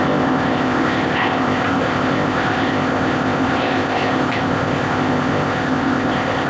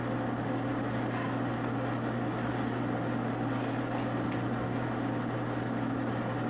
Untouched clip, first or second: second